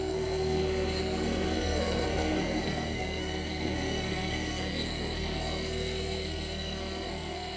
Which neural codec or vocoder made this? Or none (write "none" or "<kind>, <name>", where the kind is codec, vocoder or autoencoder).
codec, SNAC